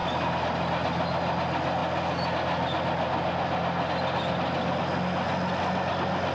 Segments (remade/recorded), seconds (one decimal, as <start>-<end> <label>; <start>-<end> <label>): 0.0-6.3 recorded